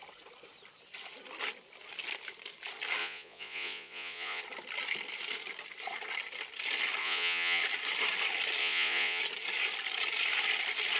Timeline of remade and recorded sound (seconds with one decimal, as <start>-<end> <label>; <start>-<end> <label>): 0.0-3.0 recorded; 3.0-4.4 remade; 4.4-7.0 recorded; 7.0-7.6 remade; 7.6-8.6 recorded; 8.6-9.2 remade; 9.2-11.0 recorded